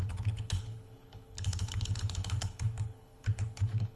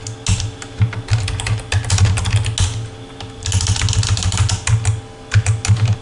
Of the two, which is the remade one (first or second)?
first